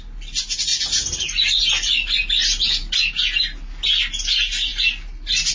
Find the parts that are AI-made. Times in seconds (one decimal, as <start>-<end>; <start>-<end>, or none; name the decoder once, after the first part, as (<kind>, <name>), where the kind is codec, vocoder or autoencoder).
none